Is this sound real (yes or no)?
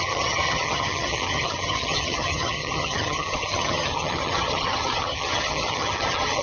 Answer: no